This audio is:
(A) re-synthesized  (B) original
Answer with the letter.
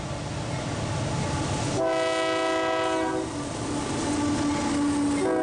B